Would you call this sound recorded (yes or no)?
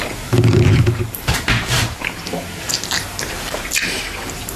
no